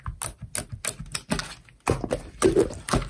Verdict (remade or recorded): recorded